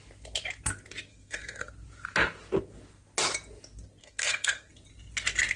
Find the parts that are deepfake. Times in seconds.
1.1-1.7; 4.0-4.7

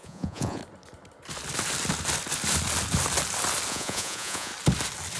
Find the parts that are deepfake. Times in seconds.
0.0-0.6; 3.7-4.5

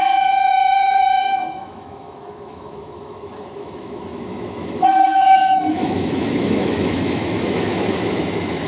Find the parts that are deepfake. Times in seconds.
0.0-8.7

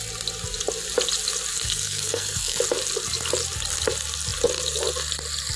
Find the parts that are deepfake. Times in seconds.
1.5-2.6

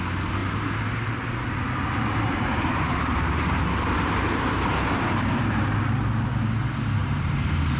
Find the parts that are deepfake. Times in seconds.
0.4-1.3; 2.1-6.0; 7.0-7.8